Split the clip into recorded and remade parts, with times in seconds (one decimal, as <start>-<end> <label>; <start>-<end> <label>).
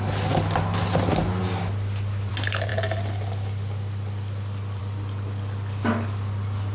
0.0-6.7 recorded